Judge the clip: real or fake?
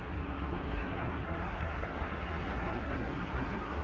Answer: fake